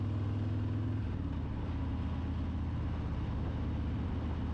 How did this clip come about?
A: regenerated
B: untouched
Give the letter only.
B